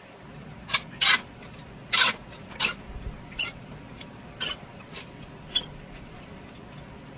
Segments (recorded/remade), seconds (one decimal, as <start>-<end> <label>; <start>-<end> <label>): 0.0-4.7 recorded; 4.7-6.6 remade; 6.6-7.2 recorded